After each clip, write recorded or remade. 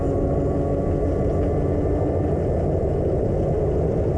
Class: recorded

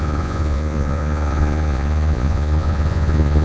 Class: remade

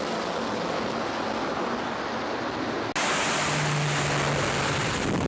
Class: recorded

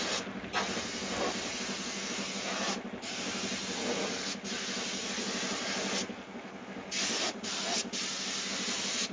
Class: recorded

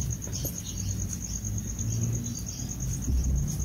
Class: recorded